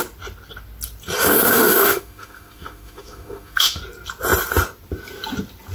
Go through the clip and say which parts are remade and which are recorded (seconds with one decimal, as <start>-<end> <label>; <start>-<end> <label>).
0.0-1.2 recorded; 1.2-3.8 remade; 3.8-5.7 recorded